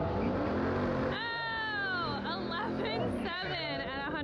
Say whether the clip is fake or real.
real